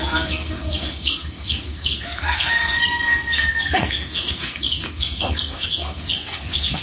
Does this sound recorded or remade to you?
remade